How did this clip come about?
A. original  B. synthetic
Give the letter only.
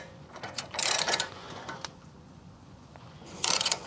B